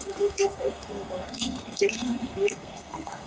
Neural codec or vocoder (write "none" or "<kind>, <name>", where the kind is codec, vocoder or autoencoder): codec, SNAC